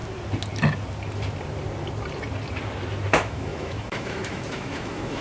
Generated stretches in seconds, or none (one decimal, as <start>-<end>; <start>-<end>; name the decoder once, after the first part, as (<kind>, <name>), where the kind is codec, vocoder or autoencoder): 3.1-5.2 (autoencoder, DAC-VAE)